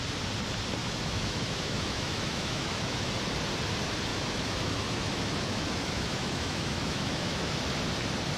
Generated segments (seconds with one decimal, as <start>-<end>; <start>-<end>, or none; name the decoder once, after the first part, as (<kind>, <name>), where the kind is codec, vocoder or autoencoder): 0.8-3.1 (autoencoder, DAC-VAE); 4.1-7.5